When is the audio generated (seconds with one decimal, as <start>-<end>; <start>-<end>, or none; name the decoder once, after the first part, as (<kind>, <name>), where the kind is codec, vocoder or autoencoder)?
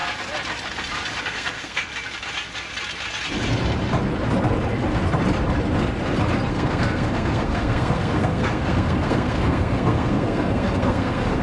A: 1.2-1.9 (codec, SNAC); 6.5-11.4